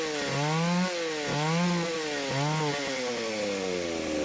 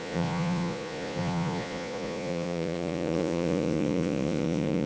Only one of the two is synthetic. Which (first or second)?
second